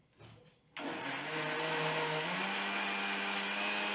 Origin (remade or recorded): recorded